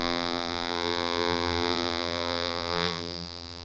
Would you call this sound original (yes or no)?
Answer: no